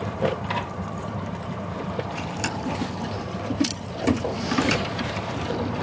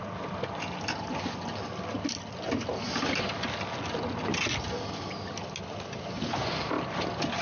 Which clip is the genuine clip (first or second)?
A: second